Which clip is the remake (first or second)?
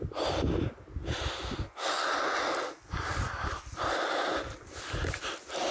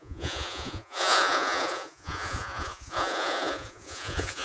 second